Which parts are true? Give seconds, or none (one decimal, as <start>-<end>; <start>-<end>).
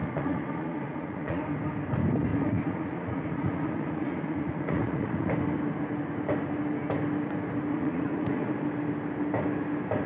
1.4-2.3; 5.3-7.7; 8.5-10.1